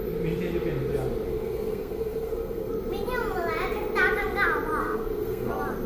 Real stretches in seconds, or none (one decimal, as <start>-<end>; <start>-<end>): 0.0-1.3; 2.7-4.8; 5.5-5.9